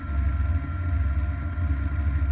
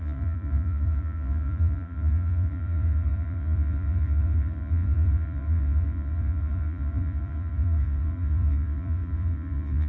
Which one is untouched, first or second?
first